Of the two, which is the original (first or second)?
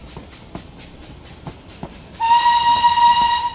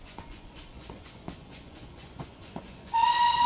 first